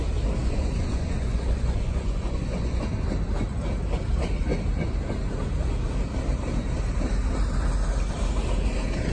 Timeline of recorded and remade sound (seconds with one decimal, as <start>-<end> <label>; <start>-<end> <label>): 0.0-0.4 recorded; 0.4-2.8 remade; 2.8-9.1 recorded